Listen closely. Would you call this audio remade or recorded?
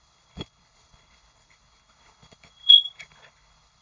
remade